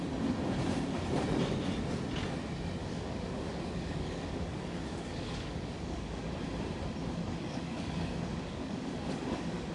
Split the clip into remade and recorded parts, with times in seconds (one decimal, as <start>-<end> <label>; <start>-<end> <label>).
0.0-2.8 recorded; 2.8-6.3 remade; 6.3-7.0 recorded; 7.0-9.7 remade